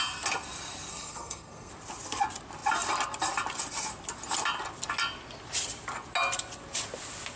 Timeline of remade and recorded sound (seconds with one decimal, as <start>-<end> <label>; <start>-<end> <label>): 0.0-0.9 recorded; 0.9-1.7 remade; 1.7-7.4 recorded

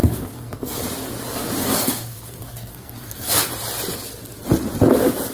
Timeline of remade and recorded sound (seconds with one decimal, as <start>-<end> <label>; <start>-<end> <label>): 0.0-0.8 remade; 0.8-1.6 recorded; 1.6-3.5 remade; 3.5-5.3 recorded

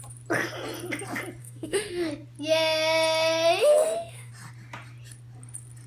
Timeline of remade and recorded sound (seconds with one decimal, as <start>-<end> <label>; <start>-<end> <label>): 0.0-1.4 recorded; 1.4-2.1 remade; 2.1-3.6 recorded; 3.6-4.3 remade; 4.3-5.9 recorded

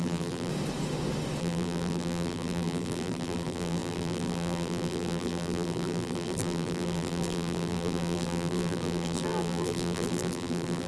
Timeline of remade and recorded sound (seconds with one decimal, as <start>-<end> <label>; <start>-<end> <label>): 0.0-0.5 remade; 0.5-1.4 recorded; 1.4-10.9 remade

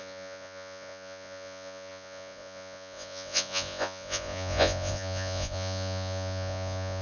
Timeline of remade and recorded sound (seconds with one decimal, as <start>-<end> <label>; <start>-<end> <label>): 0.0-7.0 remade

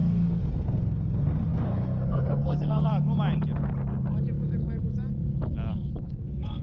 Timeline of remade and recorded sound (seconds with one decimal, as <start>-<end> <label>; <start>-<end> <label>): 0.0-2.9 remade; 2.9-6.0 recorded; 6.0-6.6 remade

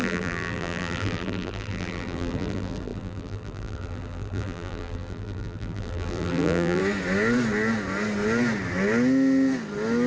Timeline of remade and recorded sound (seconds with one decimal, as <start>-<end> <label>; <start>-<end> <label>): 0.0-6.8 remade; 6.8-10.1 recorded